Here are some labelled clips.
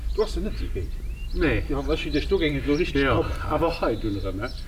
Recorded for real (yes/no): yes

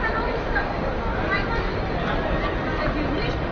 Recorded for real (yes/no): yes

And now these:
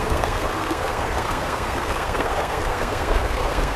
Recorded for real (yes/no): no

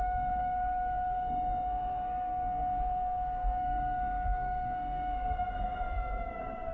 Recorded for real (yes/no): no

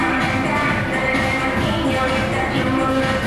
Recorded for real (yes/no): yes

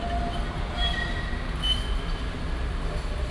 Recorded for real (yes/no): yes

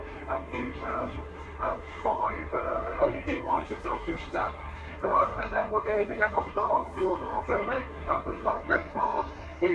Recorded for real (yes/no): no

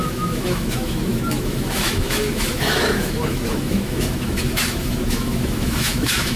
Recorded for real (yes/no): no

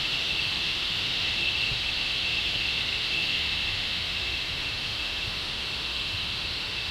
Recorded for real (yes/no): no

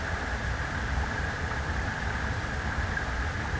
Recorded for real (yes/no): yes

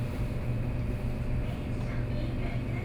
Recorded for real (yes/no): yes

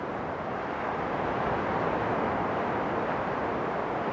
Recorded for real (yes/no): yes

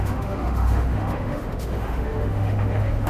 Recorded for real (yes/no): no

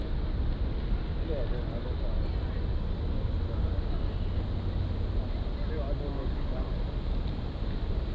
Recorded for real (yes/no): yes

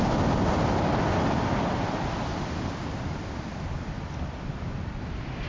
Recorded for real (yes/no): yes